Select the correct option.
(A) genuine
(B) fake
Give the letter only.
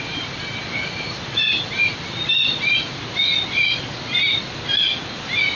A